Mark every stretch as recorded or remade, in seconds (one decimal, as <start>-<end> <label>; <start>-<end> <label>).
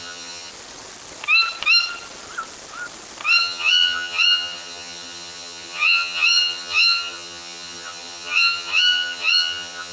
0.0-0.5 remade; 0.5-3.4 recorded; 3.4-9.9 remade